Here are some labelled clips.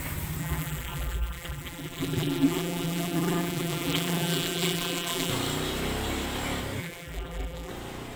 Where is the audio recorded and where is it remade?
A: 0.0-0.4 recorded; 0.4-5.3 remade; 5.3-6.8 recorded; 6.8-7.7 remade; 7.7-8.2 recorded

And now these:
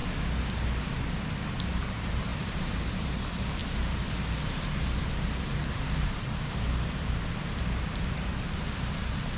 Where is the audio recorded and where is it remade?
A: 0.0-1.7 recorded; 1.7-9.4 remade